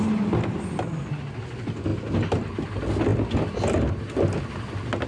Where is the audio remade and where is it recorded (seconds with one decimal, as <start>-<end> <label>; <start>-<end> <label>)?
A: 0.0-5.1 recorded